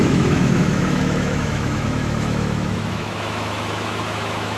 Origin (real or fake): fake